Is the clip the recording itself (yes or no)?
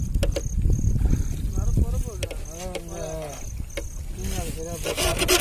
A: yes